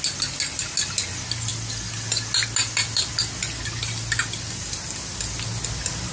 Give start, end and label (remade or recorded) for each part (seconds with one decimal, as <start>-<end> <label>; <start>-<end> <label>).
0.0-6.1 recorded